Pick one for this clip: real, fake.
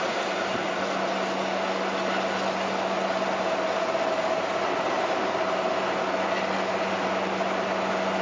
real